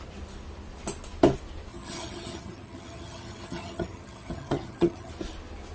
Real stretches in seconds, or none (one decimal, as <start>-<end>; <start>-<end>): 0.0-1.7; 5.1-5.7